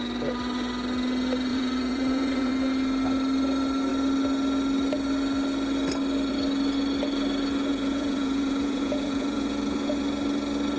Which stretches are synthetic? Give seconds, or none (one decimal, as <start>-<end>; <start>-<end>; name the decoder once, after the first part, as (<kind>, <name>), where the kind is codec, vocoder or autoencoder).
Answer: 1.5-2.5 (vocoder, Vocos); 7.7-10.0